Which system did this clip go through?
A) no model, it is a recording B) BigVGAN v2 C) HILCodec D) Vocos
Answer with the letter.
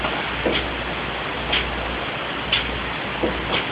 A